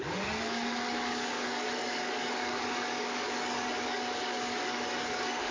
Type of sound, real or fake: fake